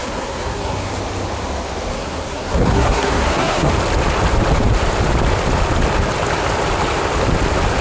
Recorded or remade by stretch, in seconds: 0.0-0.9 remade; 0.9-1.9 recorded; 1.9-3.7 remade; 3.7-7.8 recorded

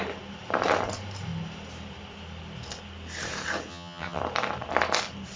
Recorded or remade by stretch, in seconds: 0.0-3.7 recorded; 3.7-4.2 remade; 4.2-5.4 recorded